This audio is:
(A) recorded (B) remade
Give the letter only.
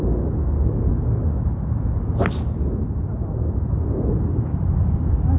A